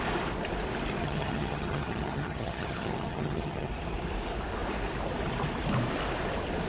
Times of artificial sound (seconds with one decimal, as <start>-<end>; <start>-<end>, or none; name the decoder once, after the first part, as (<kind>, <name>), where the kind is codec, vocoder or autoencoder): 1.0-3.7 (vocoder, HiFi-GAN)